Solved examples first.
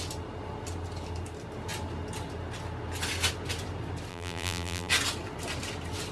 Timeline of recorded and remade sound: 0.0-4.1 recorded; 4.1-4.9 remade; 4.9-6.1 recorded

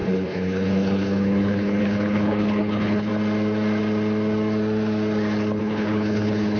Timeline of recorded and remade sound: 0.0-3.1 remade; 3.1-5.6 recorded; 5.6-6.6 remade

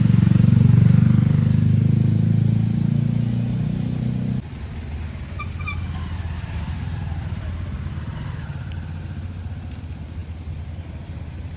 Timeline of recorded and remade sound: 0.0-11.6 recorded

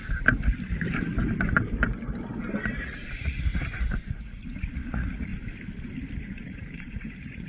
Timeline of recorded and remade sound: 0.0-2.8 recorded; 2.8-5.3 remade; 5.3-6.2 recorded; 6.2-7.5 remade

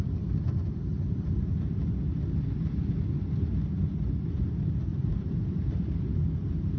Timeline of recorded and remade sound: 0.0-0.9 recorded; 0.9-1.5 remade; 1.5-4.9 recorded; 4.9-5.9 remade; 5.9-6.8 recorded

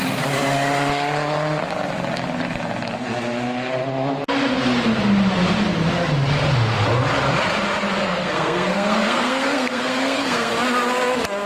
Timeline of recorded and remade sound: 0.0-8.0 recorded; 8.0-10.5 remade; 10.5-11.5 recorded

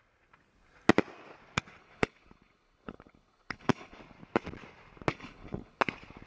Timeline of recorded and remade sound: 0.0-1.8 recorded; 1.8-4.0 remade; 4.0-5.1 recorded; 5.1-5.8 remade; 5.8-6.3 recorded

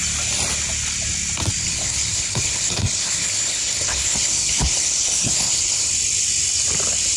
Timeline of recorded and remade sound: 0.0-1.6 recorded; 1.6-5.9 remade; 5.9-7.2 recorded